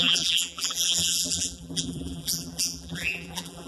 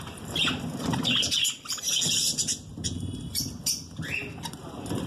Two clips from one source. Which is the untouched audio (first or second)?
second